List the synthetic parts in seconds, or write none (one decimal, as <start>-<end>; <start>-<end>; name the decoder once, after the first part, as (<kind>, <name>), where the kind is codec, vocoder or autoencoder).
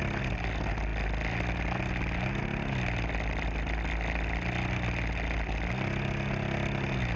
none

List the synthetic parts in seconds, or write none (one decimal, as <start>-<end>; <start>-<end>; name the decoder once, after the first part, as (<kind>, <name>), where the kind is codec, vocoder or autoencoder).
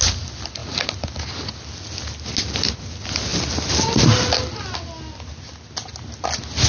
none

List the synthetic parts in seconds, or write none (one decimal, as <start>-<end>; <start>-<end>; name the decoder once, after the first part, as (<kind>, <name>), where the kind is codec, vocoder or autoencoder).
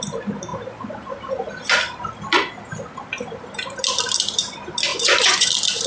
4.9-5.5 (vocoder, Vocos)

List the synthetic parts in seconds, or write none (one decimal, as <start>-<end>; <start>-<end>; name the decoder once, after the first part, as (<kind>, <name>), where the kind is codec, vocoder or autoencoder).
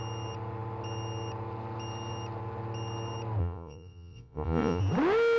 3.4-4.8 (vocoder, Vocos)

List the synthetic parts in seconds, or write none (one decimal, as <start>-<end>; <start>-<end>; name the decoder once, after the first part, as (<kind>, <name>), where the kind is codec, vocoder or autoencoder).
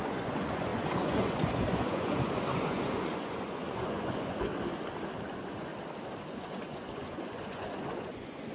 0.0-4.5 (vocoder, Vocos); 5.3-5.7; 6.4-8.5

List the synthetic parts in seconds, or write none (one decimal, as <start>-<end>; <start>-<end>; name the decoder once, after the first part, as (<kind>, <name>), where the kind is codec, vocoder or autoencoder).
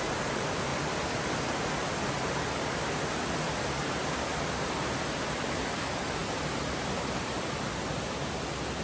none